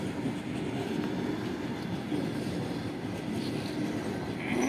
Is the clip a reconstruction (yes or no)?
no